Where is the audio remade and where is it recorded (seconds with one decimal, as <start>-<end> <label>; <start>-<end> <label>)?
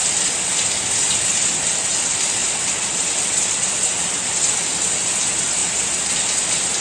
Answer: 0.0-6.8 recorded